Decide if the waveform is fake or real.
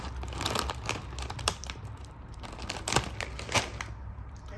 real